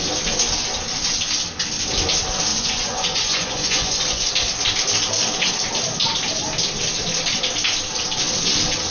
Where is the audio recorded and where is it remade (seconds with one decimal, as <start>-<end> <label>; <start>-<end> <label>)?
0.0-2.5 recorded; 2.5-4.3 remade; 4.3-8.9 recorded

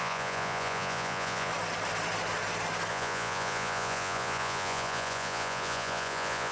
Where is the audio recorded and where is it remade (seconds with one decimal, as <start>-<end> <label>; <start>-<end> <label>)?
0.0-1.5 remade; 1.5-2.9 recorded; 2.9-6.5 remade

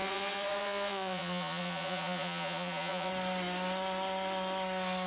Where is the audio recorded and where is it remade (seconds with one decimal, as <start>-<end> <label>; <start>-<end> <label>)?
0.0-3.1 remade; 3.1-5.1 recorded